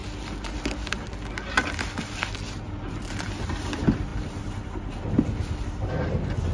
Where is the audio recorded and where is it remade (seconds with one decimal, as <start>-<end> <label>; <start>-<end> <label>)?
0.0-6.5 recorded